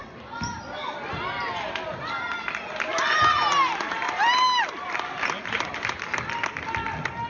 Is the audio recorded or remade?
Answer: recorded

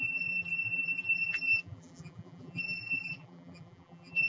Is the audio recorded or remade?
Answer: remade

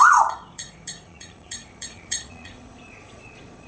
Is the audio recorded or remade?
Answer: remade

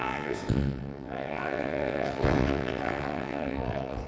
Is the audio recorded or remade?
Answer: remade